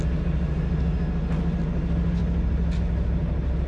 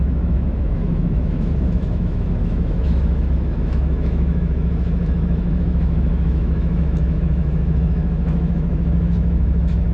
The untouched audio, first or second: first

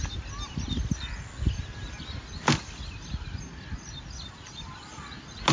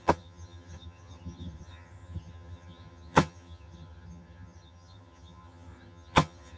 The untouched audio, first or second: first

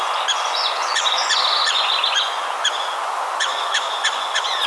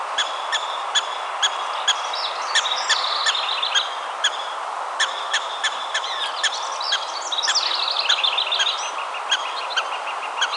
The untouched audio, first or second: second